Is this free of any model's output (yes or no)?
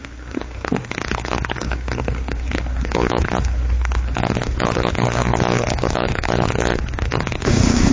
no